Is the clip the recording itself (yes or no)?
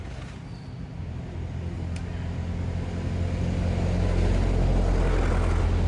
yes